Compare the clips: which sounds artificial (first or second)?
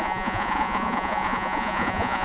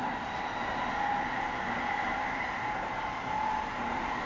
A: first